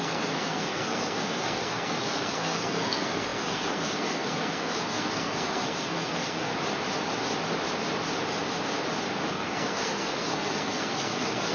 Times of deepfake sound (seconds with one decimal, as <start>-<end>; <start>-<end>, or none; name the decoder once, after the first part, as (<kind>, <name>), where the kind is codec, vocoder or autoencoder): 0.0-6.5 (codec, SNAC); 9.3-11.5